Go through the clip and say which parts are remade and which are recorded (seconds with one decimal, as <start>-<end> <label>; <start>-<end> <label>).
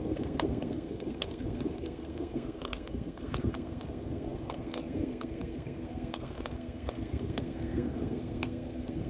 0.0-9.1 remade